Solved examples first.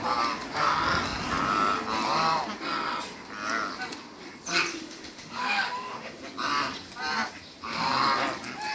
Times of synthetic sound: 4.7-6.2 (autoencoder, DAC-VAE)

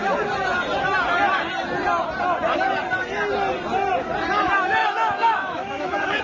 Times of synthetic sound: 4.8-6.2 (autoencoder, DAC-VAE)

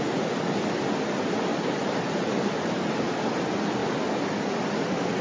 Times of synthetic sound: 1.5-3.0 (vocoder, BigVGAN v2)

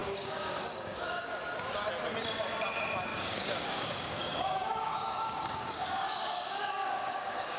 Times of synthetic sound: 0.0-1.4 (codec, DAC); 3.1-7.6

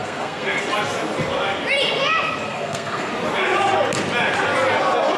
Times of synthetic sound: 0.0-0.6 (codec, SNAC); 2.5-3.1